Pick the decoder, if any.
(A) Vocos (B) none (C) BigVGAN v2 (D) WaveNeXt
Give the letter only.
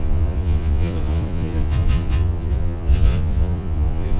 A